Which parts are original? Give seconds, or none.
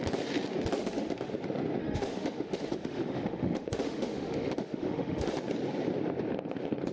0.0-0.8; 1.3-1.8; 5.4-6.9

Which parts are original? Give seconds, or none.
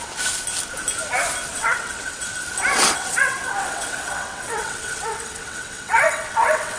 0.0-1.5; 2.2-2.7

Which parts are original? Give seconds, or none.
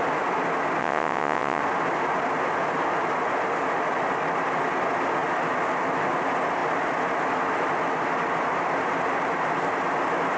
0.0-0.8; 1.6-10.4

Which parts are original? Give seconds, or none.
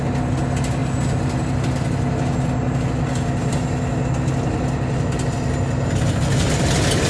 0.0-7.1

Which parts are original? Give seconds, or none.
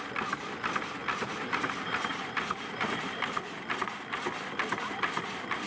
0.0-1.0; 3.1-5.7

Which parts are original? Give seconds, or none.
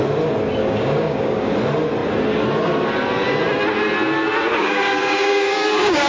0.0-0.6; 1.5-4.6